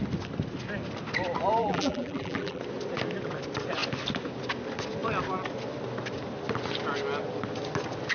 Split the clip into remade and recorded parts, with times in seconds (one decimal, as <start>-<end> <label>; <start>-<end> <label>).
0.0-1.6 recorded; 1.6-2.6 remade; 2.6-8.1 recorded